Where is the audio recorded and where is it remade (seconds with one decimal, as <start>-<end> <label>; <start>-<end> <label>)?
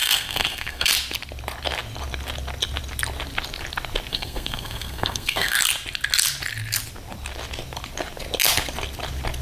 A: 0.0-0.9 remade; 0.9-4.1 recorded; 4.1-5.6 remade; 5.6-9.4 recorded